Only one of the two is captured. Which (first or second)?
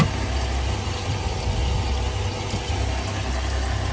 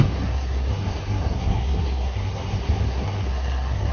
first